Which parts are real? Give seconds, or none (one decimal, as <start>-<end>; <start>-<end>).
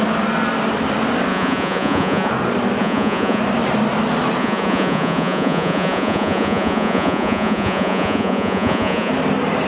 0.0-1.3; 2.3-2.8; 3.4-4.4; 9.1-9.7